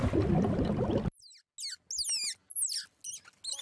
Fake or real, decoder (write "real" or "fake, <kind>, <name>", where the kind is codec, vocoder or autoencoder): real